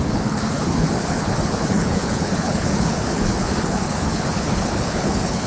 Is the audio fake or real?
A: fake